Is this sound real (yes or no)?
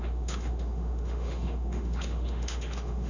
no